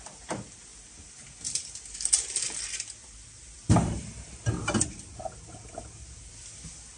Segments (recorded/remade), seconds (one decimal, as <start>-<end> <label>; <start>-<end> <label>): 0.0-7.0 recorded